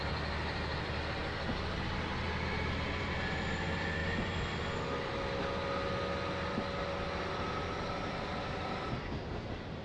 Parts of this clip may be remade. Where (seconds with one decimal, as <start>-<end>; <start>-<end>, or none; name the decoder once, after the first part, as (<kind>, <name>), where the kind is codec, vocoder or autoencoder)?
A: none